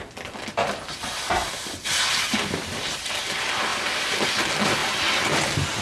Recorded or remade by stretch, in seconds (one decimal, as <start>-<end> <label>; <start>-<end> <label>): 0.0-1.4 recorded; 1.4-3.2 remade; 3.2-3.7 recorded; 3.7-4.3 remade; 4.3-5.8 recorded